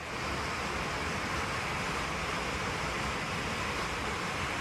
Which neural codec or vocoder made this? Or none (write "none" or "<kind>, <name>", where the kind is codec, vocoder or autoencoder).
none